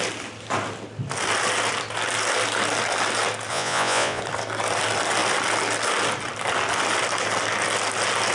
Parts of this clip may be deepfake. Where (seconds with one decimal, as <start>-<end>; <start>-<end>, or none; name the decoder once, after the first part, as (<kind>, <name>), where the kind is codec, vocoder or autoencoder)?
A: 3.5-4.2 (vocoder, Vocos)